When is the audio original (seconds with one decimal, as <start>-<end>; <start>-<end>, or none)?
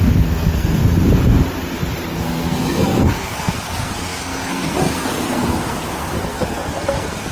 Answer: 0.8-2.1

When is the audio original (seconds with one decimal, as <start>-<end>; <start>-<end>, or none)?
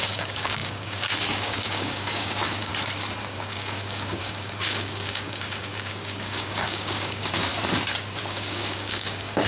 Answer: 2.7-3.2; 7.5-8.2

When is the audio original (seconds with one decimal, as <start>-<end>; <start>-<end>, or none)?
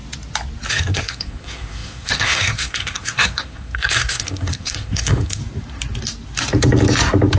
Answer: 0.0-0.7; 5.4-7.4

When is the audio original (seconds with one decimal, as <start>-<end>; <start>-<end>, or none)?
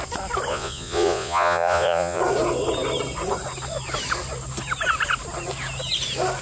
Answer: 0.0-0.5; 2.2-6.4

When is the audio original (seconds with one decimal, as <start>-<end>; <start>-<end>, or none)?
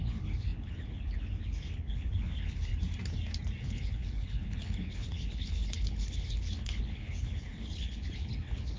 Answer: 2.7-3.6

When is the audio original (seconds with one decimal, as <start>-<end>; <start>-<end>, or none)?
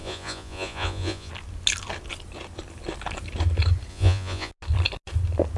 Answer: 1.3-3.9; 4.5-5.6